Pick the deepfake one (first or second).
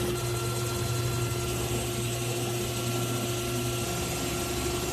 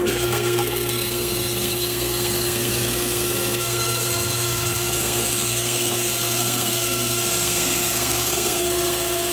second